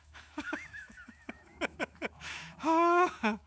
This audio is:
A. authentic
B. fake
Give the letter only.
B